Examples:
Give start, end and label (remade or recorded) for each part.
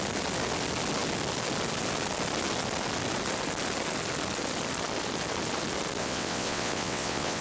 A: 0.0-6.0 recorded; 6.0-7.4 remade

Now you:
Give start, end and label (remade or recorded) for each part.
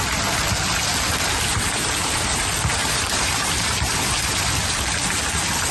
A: 0.0-1.5 recorded; 1.5-2.4 remade; 2.4-2.8 recorded; 2.8-4.4 remade; 4.4-5.7 recorded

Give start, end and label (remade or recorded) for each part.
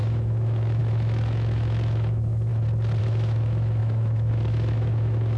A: 0.0-2.5 remade; 2.5-3.0 recorded; 3.0-5.4 remade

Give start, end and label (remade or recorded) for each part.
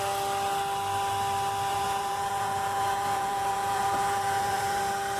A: 0.0-1.7 recorded; 1.7-4.8 remade; 4.8-5.2 recorded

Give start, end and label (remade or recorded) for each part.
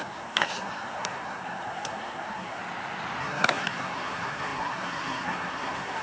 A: 0.0-2.6 remade; 2.6-3.2 recorded; 3.2-6.0 remade